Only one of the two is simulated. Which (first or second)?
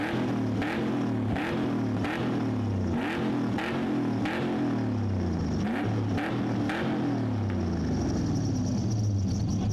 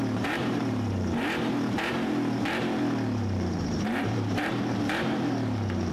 second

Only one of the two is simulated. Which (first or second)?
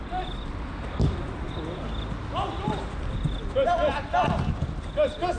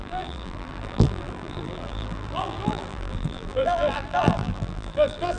second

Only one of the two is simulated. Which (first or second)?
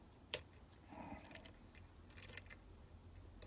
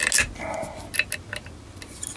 first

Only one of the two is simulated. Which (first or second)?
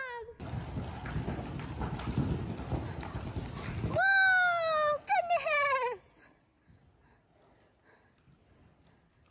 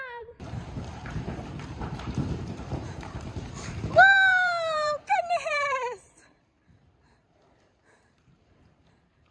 second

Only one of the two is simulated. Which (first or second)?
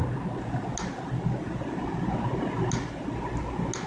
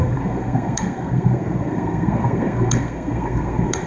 second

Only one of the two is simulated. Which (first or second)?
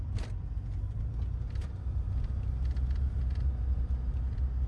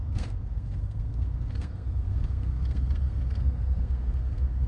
second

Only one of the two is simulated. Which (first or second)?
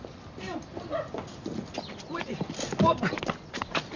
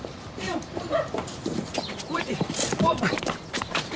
second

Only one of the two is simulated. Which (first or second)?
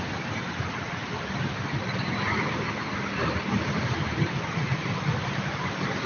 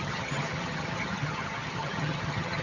second